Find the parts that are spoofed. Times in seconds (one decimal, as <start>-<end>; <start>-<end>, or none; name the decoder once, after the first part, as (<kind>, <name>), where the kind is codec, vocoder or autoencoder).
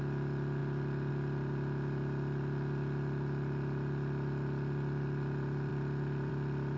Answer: none